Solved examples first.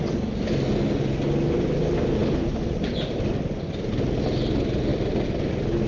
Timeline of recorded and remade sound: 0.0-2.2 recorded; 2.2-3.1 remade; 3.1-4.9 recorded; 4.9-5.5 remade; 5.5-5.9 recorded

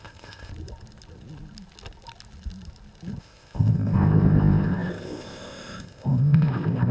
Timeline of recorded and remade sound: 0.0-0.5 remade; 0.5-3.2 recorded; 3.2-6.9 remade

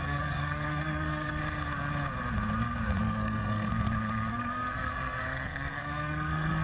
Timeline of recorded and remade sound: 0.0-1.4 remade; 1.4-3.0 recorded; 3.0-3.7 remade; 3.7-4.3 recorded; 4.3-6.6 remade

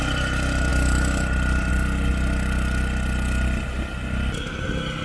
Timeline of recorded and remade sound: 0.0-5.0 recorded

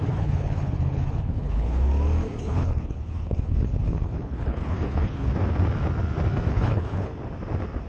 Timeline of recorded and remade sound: 0.0-1.9 remade; 1.9-2.4 recorded; 2.4-5.3 remade; 5.3-6.5 recorded; 6.5-7.1 remade; 7.1-7.9 recorded